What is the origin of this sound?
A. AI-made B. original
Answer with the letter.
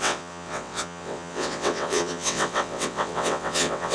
A